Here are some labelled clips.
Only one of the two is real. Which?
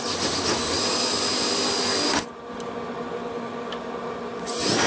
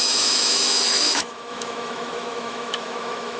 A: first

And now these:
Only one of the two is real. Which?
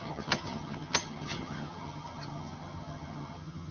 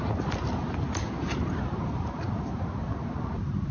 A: second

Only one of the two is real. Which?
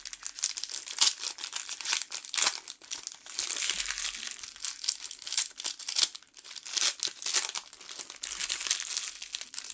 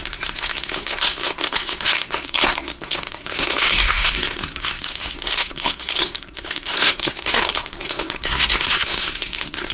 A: first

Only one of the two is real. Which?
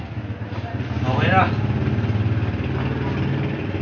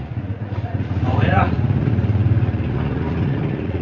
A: first